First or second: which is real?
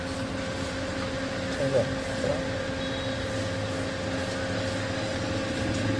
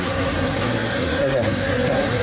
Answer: first